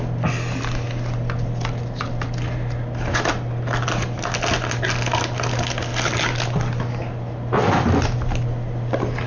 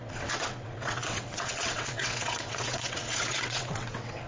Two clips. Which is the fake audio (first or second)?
second